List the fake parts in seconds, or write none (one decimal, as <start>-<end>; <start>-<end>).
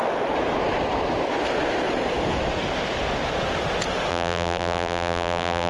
4.1-5.7